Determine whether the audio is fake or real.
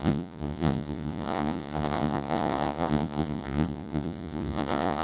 fake